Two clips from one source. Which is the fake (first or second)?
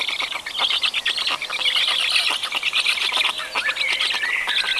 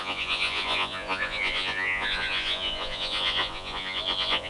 second